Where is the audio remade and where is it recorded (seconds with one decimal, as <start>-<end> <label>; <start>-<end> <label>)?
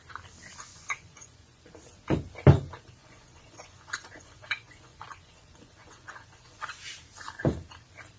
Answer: 0.0-0.7 recorded; 0.7-1.7 remade; 1.7-3.0 recorded; 3.0-6.8 remade; 6.8-8.2 recorded